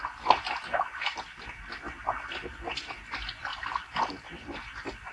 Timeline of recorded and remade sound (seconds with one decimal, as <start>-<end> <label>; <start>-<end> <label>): 0.0-3.5 recorded; 3.5-4.1 remade; 4.1-5.1 recorded

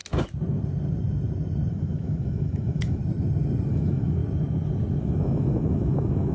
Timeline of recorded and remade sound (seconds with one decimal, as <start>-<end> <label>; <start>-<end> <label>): 0.0-1.7 recorded; 1.7-3.0 remade; 3.0-3.7 recorded; 3.7-4.2 remade; 4.2-5.0 recorded; 5.0-6.3 remade

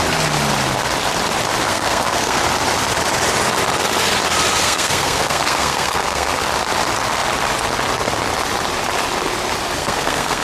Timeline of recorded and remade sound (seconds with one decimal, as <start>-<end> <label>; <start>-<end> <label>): 0.0-1.7 recorded; 1.7-2.4 remade; 2.4-4.6 recorded; 4.6-6.5 remade; 6.5-9.8 recorded; 9.8-10.4 remade

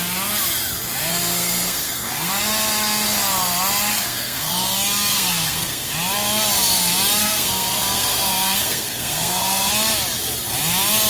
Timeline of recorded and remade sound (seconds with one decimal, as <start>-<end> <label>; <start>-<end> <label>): 0.0-1.1 recorded; 1.1-2.3 remade; 2.3-3.9 recorded; 3.9-4.5 remade; 4.5-5.1 recorded; 5.1-5.9 remade; 5.9-7.2 recorded; 7.2-9.7 remade; 9.7-11.1 recorded

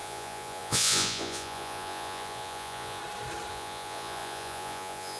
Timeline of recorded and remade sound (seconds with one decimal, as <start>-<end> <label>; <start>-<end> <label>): 0.0-3.0 remade; 3.0-3.5 recorded; 3.5-5.2 remade

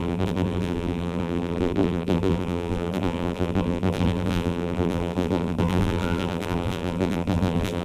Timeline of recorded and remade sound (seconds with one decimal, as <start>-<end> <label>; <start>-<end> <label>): 0.0-7.8 remade

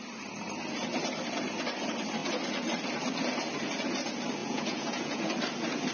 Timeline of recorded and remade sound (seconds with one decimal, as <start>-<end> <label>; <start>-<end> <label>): 0.0-4.4 recorded; 4.4-5.2 remade; 5.2-5.9 recorded

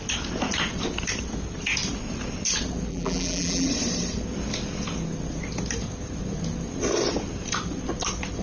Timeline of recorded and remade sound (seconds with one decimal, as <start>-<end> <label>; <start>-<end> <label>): 0.0-2.9 recorded; 2.9-3.7 remade; 3.7-8.4 recorded